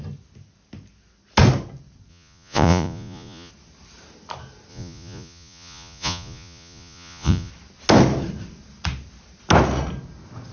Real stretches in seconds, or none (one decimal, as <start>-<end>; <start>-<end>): 0.0-2.1; 3.5-4.7; 7.5-10.5